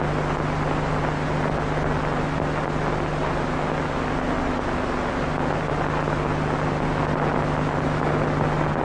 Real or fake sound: real